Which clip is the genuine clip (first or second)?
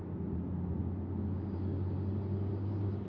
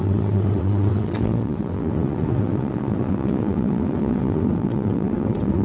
first